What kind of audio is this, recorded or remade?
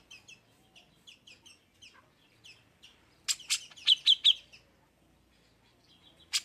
recorded